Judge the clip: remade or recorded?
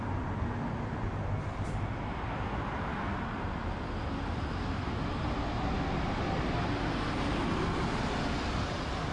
recorded